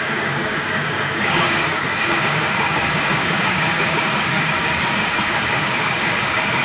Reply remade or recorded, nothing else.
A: remade